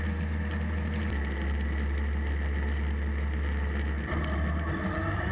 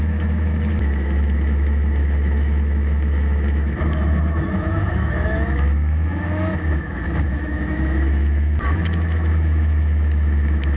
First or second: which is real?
first